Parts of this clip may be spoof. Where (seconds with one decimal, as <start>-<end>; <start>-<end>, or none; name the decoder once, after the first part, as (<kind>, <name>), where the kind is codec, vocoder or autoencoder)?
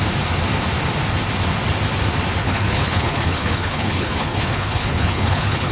2.4-5.7 (codec, HILCodec)